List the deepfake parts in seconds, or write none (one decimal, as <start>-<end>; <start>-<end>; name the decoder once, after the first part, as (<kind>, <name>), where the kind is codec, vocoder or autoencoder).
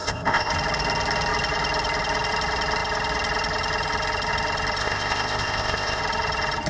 0.0-0.5 (codec, ZipCodec); 4.8-6.0